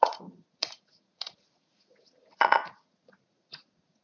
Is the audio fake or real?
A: fake